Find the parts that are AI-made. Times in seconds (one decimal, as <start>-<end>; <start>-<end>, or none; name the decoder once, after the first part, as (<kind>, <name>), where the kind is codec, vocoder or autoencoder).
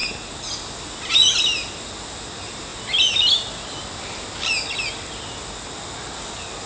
none